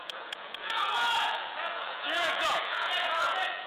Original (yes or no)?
no